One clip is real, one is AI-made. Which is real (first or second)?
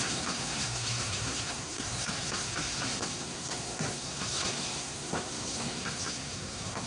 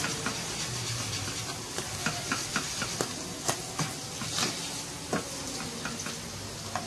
second